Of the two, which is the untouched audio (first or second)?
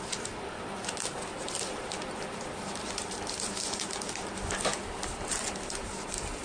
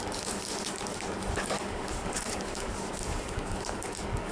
first